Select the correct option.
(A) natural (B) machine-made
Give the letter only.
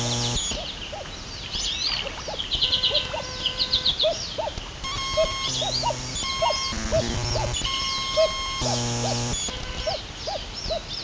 A